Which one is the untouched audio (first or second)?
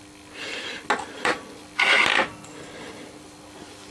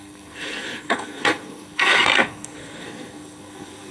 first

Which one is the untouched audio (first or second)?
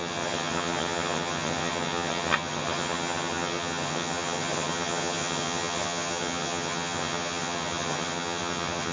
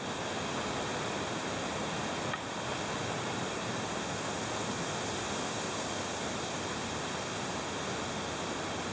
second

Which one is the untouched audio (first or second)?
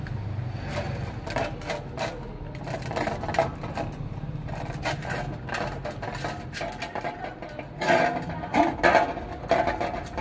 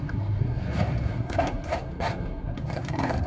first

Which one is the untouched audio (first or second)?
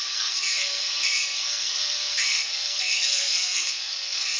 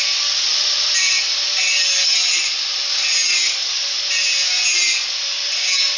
second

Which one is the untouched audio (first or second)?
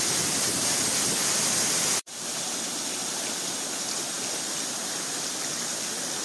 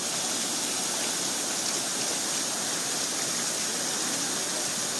second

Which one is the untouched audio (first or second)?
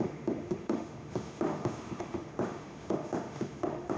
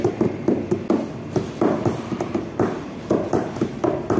second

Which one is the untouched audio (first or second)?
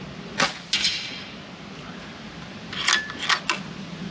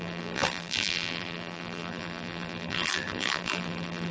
first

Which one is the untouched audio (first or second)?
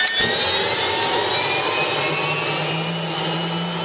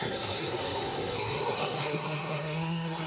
first